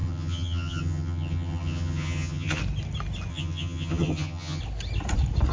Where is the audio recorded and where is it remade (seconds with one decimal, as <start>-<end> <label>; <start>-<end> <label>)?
0.0-2.6 remade; 2.6-3.3 recorded; 3.3-4.6 remade; 4.6-5.5 recorded